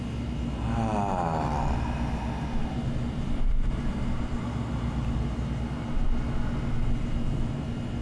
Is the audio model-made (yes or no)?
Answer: no